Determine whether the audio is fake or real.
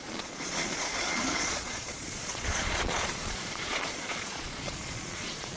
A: fake